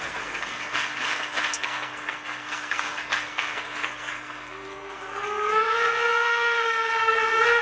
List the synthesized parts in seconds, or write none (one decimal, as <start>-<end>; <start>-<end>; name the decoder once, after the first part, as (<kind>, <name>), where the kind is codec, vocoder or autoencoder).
0.0-7.6 (codec, SNAC)